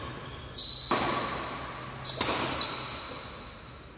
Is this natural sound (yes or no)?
yes